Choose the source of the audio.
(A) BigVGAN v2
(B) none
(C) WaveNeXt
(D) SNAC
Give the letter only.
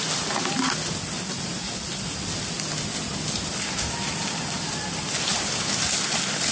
B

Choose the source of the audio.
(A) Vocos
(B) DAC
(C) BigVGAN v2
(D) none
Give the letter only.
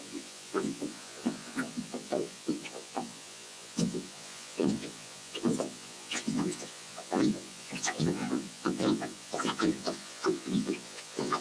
A